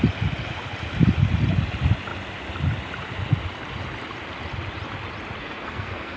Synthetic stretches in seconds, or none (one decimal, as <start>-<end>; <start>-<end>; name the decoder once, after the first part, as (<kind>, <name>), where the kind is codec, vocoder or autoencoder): 5.4-6.2 (codec, SNAC)